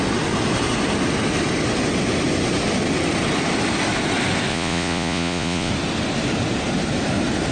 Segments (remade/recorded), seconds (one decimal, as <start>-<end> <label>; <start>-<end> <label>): 0.0-4.5 recorded; 4.5-5.7 remade; 5.7-7.5 recorded